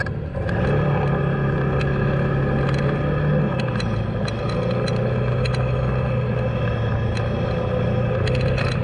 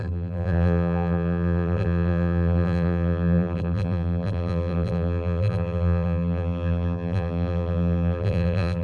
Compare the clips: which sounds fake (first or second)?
second